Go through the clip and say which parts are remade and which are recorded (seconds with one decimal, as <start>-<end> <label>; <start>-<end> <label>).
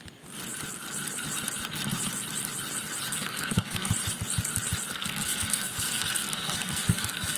0.0-3.1 recorded; 3.1-3.9 remade; 3.9-4.9 recorded; 4.9-7.4 remade